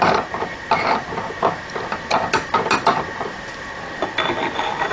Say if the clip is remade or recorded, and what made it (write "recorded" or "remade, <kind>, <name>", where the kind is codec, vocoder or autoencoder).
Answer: recorded